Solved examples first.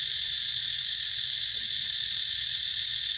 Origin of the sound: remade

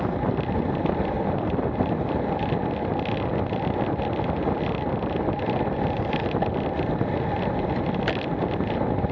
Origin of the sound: recorded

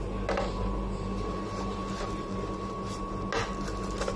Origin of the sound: recorded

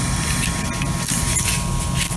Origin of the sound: recorded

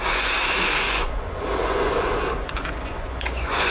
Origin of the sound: remade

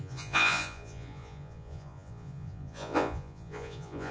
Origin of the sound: remade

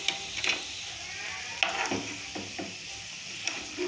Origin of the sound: recorded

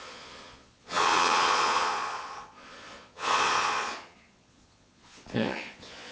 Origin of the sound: remade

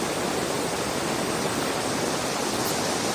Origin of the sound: recorded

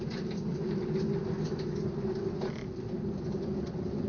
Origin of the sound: recorded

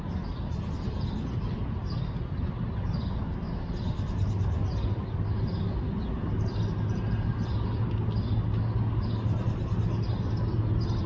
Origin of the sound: recorded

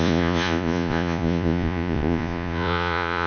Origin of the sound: remade